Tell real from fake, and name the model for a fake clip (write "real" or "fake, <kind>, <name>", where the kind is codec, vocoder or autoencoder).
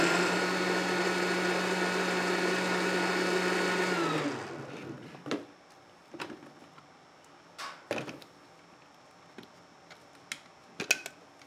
real